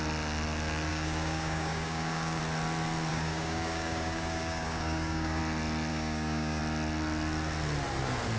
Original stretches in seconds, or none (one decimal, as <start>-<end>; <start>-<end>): 0.0-0.9; 2.4-3.1; 5.4-5.9; 6.6-8.4